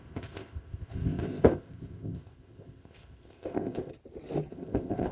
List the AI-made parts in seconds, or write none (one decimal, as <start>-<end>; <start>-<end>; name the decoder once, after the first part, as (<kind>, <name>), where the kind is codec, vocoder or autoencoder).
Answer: 0.0-3.9 (codec, ZipCodec); 4.5-5.1